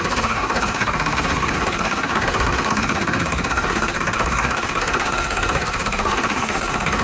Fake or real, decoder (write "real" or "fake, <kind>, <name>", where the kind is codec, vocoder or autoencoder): fake, codec, SNAC